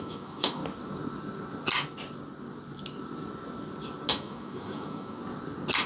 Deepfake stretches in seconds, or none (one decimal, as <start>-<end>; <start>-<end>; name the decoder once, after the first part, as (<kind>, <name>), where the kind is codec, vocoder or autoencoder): 0.0-0.6 (autoencoder, DAC-VAE); 4.1-5.2